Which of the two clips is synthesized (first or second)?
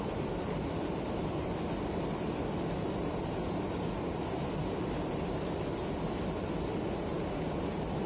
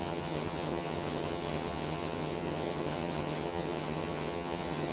second